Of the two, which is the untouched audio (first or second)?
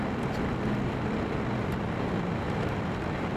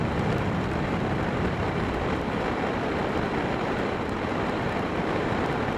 first